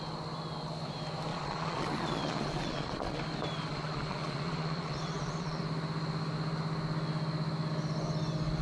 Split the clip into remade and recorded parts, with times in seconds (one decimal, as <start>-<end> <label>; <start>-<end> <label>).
0.0-1.3 recorded; 1.3-3.2 remade; 3.2-3.7 recorded; 3.7-5.6 remade; 5.6-8.6 recorded